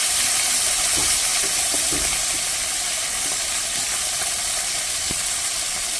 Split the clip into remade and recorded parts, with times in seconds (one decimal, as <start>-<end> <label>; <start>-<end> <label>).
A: 0.0-6.0 recorded